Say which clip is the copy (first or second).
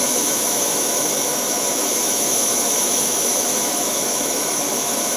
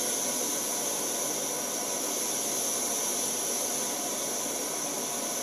first